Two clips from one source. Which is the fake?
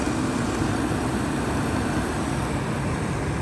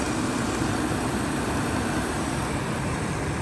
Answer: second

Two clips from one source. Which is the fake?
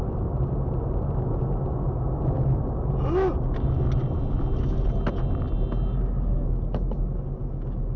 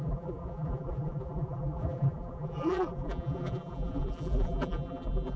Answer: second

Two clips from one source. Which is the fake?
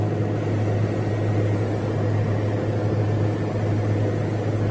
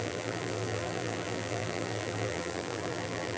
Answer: second